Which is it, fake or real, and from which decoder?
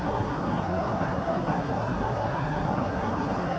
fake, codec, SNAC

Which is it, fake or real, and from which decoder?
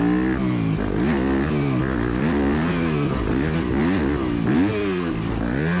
real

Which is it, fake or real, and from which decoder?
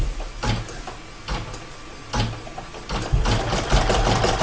real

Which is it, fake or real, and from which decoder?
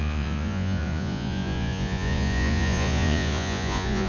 fake, vocoder, Vocos